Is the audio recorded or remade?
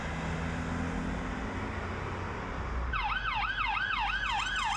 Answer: recorded